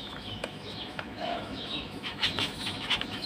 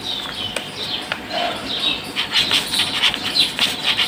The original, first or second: second